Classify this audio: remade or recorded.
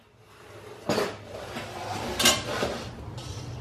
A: recorded